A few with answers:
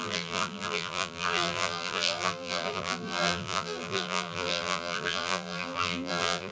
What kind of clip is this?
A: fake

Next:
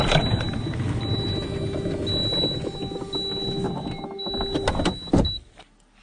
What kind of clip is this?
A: real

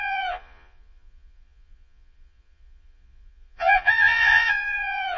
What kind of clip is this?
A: fake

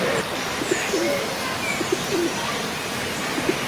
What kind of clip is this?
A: real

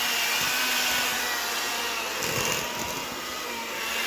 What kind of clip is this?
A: real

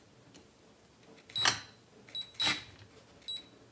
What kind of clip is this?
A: real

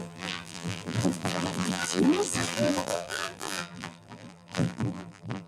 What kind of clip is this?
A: fake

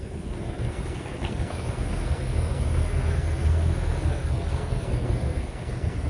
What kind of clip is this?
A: fake